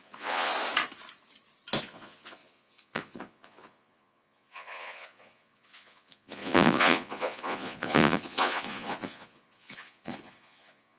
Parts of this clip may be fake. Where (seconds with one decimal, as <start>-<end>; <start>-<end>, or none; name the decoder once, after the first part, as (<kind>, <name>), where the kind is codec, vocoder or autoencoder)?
0.0-0.5 (vocoder, Vocos); 1.8-11.0